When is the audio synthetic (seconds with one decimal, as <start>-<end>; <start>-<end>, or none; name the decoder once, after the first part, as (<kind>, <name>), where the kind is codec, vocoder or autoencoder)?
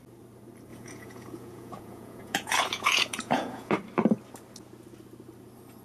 0.7-3.7 (vocoder, Vocos)